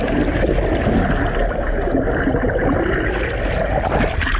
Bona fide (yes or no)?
yes